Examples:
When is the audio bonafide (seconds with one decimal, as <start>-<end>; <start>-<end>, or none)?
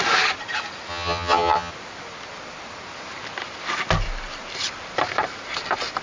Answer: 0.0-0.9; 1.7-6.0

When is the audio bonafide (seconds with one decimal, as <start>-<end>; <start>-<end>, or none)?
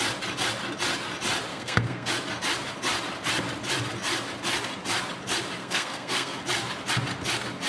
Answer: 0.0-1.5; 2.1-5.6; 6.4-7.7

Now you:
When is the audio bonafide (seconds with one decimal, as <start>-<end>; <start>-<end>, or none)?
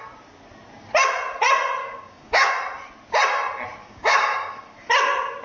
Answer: 0.0-1.8; 2.5-3.8; 4.9-5.4